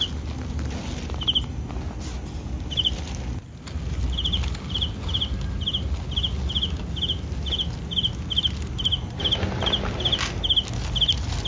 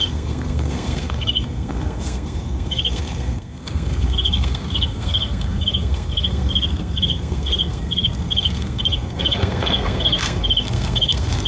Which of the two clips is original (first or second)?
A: first